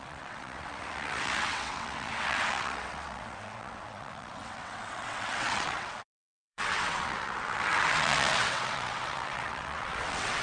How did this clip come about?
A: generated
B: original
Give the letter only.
A